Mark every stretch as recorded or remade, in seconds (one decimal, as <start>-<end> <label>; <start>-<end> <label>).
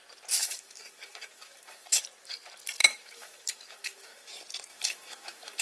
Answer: 0.0-0.4 recorded; 0.4-2.0 remade; 2.0-2.8 recorded; 2.8-4.3 remade; 4.3-4.7 recorded; 4.7-5.6 remade